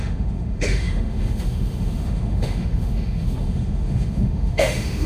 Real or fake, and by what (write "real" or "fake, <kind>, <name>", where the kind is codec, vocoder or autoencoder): fake, autoencoder, DAC-VAE